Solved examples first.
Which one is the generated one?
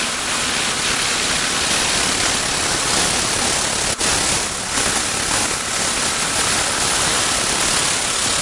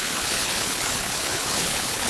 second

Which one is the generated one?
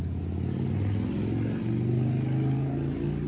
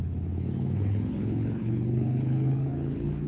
second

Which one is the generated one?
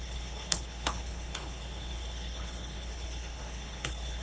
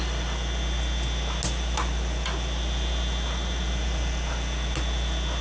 first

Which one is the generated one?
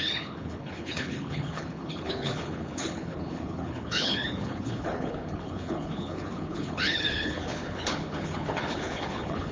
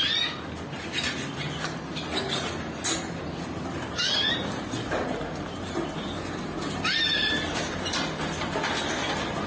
first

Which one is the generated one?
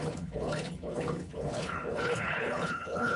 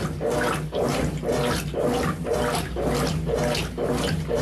first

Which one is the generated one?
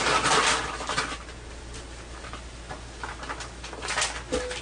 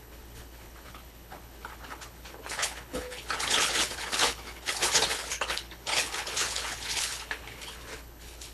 second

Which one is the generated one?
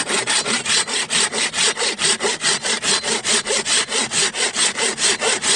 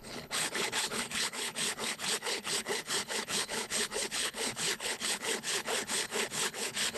second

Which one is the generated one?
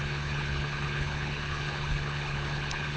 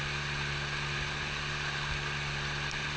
first